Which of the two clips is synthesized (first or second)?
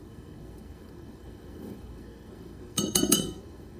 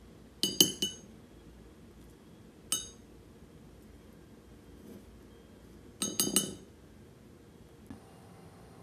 first